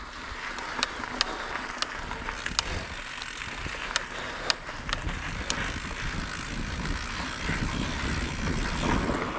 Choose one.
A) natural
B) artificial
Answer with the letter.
A